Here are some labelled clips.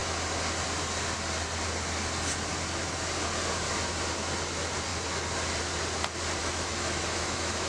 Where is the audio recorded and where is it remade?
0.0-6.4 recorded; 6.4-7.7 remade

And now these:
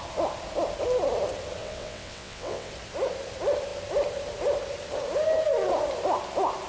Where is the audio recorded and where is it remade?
0.0-1.6 recorded; 1.6-2.7 remade; 2.7-6.7 recorded

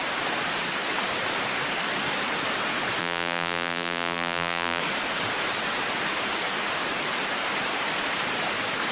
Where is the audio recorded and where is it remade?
0.0-3.0 recorded; 3.0-4.8 remade; 4.8-8.9 recorded

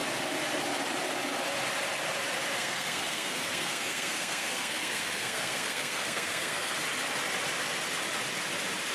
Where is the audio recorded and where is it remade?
0.0-2.5 recorded; 2.5-6.8 remade; 6.8-8.9 recorded